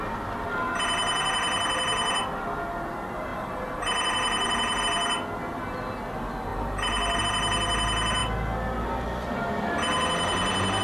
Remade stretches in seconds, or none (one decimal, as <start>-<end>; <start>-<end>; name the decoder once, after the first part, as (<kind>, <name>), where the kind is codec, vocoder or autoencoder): 3.3-4.8 (vocoder, BigVGAN v2); 6.5-7.2